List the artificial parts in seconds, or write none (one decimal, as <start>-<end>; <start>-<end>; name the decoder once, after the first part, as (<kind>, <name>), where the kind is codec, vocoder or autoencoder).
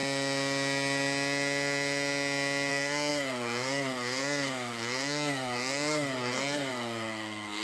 2.7-7.6 (codec, SNAC)